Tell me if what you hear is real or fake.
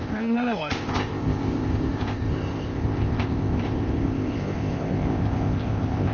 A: fake